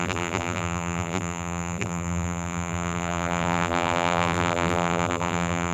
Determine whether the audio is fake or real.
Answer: fake